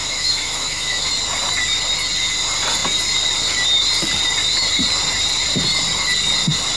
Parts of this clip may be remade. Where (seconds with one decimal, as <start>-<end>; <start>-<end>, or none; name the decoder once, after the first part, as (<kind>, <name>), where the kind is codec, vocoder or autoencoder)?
0.0-1.1 (autoencoder, DAC-VAE)